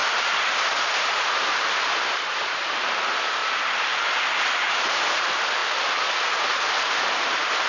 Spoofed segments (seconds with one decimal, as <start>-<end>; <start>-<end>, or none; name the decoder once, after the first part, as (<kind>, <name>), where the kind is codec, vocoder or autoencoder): 0.0-3.4 (vocoder, BigVGAN v2); 4.5-5.6; 6.4-7.7